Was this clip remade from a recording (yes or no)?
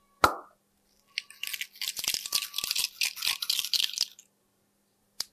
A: no